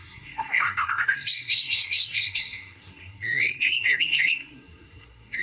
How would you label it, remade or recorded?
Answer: remade